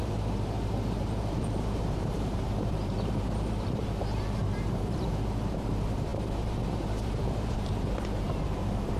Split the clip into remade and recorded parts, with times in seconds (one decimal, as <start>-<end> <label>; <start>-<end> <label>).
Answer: 0.0-9.0 remade